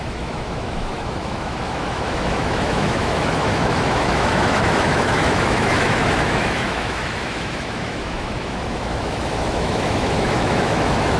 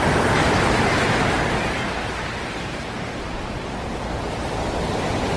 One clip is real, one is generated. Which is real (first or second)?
second